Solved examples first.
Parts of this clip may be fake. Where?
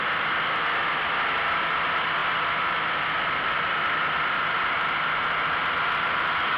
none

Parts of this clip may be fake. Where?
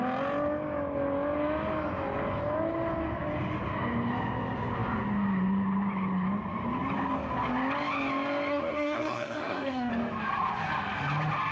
8.5-9.9 (codec, SNAC)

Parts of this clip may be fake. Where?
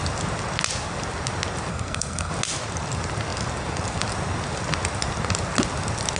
1.7-2.3 (codec, SNAC)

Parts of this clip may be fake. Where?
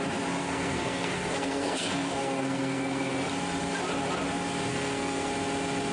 0.4-3.1 (codec, SNAC); 4.7-5.3